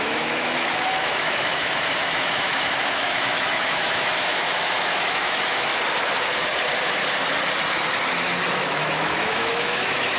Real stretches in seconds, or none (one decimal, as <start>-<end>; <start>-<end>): 5.7-8.5